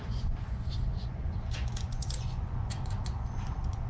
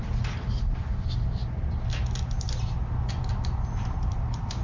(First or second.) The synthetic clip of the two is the first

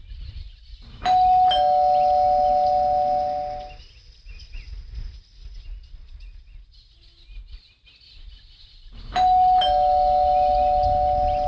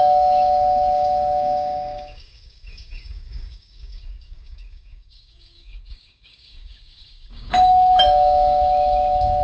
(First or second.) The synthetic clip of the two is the second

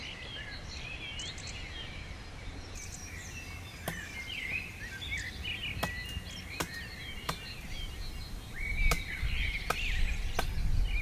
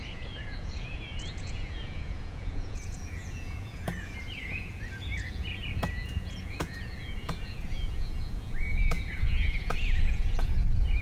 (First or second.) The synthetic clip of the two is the second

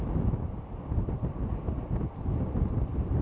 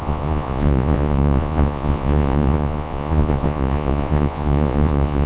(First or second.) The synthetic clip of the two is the second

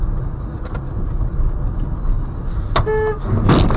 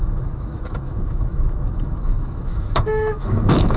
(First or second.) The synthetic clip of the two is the second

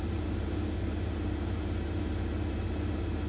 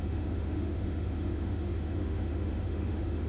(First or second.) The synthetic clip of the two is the second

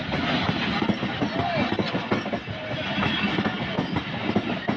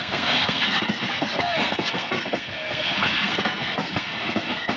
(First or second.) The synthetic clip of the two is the second